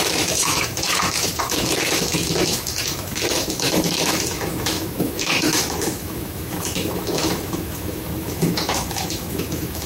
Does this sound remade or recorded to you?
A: remade